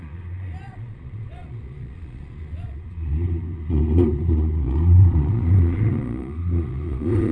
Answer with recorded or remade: remade